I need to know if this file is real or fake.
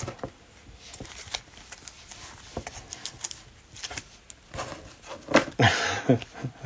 real